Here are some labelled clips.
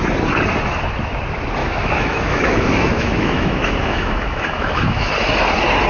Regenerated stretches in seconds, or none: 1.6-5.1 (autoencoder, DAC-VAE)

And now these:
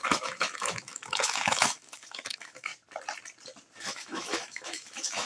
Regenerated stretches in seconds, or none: 0.0-2.7 (autoencoder, DAC-VAE); 3.8-5.3